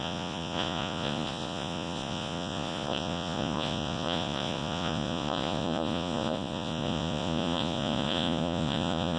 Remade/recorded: remade